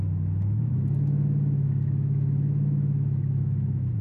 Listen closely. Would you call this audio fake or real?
fake